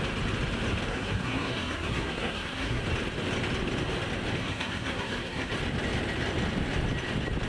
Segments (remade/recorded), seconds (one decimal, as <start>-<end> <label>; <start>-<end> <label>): 0.0-0.9 recorded; 0.9-2.8 remade; 2.8-4.4 recorded; 4.4-5.5 remade; 5.5-7.5 recorded